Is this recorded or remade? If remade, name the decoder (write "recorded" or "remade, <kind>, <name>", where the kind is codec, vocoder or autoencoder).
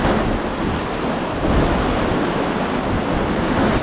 recorded